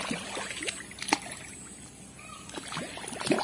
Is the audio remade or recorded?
recorded